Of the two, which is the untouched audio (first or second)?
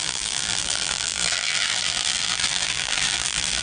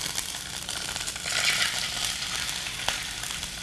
second